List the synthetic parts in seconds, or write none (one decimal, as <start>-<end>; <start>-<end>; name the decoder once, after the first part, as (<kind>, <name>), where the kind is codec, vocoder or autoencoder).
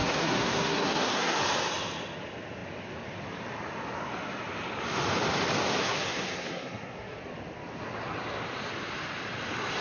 0.0-1.4 (codec, SNAC); 5.8-7.2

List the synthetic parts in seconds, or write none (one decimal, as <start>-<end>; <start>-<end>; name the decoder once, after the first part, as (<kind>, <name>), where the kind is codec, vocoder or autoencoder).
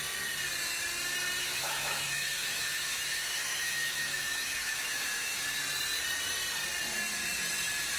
1.4-5.6 (autoencoder, DAC-VAE)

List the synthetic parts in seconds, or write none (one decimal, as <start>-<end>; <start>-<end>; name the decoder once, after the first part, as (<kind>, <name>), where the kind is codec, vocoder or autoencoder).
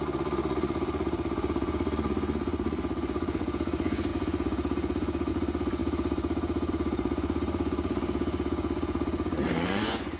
0.0-10.2 (vocoder, Vocos)